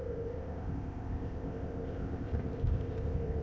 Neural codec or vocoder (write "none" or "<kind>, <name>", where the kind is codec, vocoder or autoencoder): codec, ZipCodec